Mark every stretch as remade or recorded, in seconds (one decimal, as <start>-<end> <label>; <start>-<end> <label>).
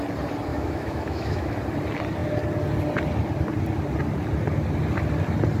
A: 0.0-0.5 recorded; 0.5-1.5 remade; 1.5-5.6 recorded